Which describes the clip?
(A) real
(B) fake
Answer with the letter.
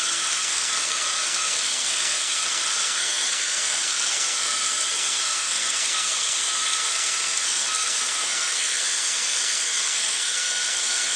B